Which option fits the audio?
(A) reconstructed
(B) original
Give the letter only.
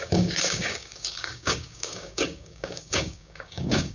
A